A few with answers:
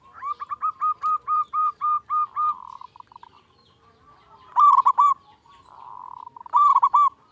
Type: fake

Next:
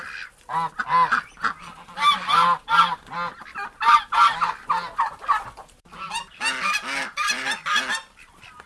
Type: real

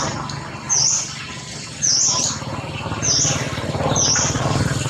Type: real